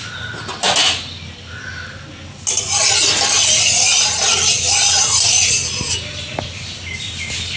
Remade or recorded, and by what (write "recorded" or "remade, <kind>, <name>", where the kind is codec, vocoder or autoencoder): recorded